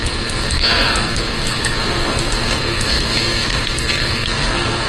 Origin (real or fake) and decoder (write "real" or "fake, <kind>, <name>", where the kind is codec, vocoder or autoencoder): fake, codec, SNAC